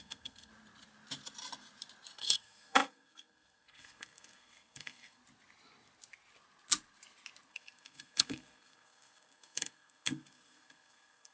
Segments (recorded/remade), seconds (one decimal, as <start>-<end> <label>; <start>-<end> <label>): 0.0-0.5 remade; 0.5-2.2 recorded; 2.2-5.2 remade; 5.2-7.5 recorded; 7.5-11.3 remade